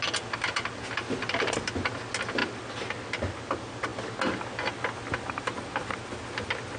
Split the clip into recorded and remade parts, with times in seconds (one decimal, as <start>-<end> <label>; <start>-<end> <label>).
0.0-6.8 recorded